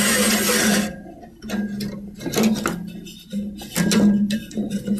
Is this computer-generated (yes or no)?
no